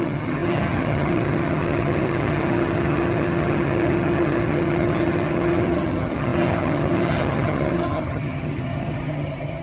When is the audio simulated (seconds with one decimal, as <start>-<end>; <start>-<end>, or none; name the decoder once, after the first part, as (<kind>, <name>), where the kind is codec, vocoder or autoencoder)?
0.0-9.6 (vocoder, HiFi-GAN)